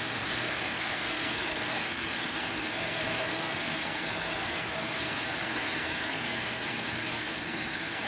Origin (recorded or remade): remade